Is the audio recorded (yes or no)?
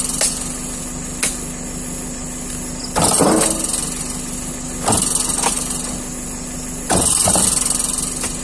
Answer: yes